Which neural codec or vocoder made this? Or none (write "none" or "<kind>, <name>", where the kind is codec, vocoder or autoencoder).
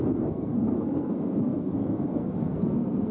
codec, SNAC